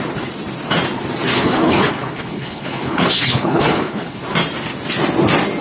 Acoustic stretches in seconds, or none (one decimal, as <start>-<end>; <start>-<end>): 0.0-1.3; 4.2-5.6